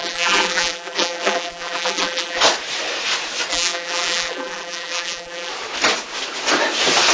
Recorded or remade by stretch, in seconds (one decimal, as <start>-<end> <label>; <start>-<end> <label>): 0.0-2.4 remade; 2.4-3.5 recorded; 3.5-5.5 remade; 5.5-7.1 recorded

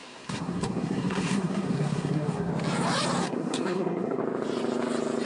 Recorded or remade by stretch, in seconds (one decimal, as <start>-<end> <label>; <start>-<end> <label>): 0.0-2.5 remade; 2.5-3.2 recorded; 3.2-4.2 remade; 4.2-5.3 recorded

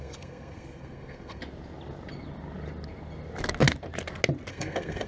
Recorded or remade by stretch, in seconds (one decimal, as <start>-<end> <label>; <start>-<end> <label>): 0.0-1.4 remade; 1.4-4.5 recorded; 4.5-5.1 remade

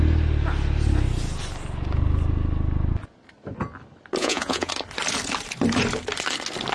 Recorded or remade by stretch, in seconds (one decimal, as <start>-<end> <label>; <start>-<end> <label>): 0.0-4.2 recorded; 4.2-4.7 remade; 4.7-6.7 recorded

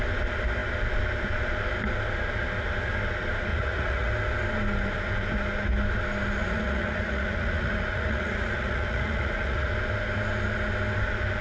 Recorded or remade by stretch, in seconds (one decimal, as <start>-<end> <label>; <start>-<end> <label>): 0.0-3.5 recorded; 3.5-4.1 remade; 4.1-6.4 recorded; 6.4-9.7 remade; 9.7-11.4 recorded

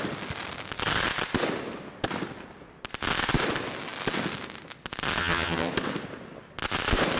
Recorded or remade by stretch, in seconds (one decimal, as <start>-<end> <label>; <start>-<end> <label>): 0.0-5.2 recorded; 5.2-5.7 remade; 5.7-7.2 recorded

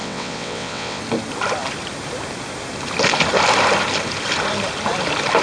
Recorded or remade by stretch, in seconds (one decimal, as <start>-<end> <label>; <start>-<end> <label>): 0.0-1.0 remade; 1.0-5.4 recorded